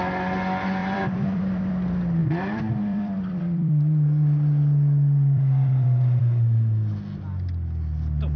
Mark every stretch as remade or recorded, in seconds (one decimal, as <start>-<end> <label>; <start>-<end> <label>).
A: 0.0-0.8 recorded; 0.8-1.7 remade; 1.7-2.2 recorded; 2.2-6.2 remade; 6.2-8.4 recorded